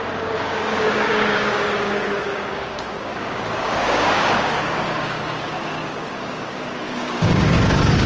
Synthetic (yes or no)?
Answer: yes